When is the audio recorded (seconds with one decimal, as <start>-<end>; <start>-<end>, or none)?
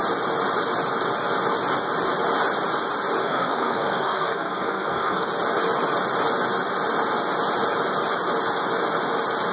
0.0-3.2; 5.3-9.5